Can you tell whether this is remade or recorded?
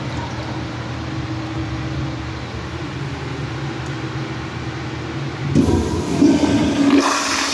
recorded